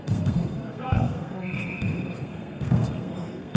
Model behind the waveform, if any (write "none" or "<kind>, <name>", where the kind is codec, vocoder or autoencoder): codec, SNAC